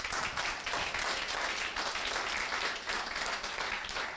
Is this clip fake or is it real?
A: real